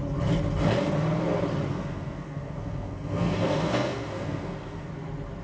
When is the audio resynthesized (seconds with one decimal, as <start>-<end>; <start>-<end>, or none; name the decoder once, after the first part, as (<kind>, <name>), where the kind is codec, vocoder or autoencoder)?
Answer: 1.7-4.9 (codec, SNAC)